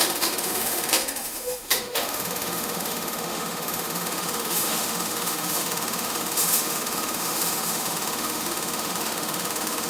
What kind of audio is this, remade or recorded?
remade